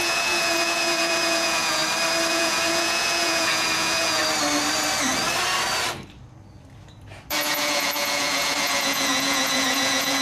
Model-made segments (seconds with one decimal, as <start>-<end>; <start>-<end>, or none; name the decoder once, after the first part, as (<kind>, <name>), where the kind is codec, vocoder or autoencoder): 0.0-1.8 (vocoder, Vocos); 2.3-4.2; 7.3-10.2

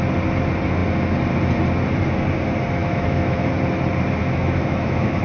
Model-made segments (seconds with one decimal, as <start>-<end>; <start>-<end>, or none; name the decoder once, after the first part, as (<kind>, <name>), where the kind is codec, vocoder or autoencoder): 2.8-3.5 (autoencoder, DAC-VAE); 4.2-5.2